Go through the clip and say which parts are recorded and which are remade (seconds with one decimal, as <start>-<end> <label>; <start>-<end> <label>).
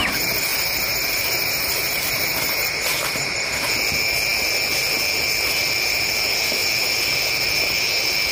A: 0.0-0.5 recorded; 0.5-3.5 remade; 3.5-8.3 recorded